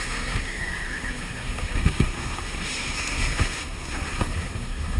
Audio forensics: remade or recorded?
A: remade